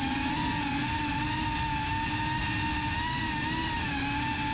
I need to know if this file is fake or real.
real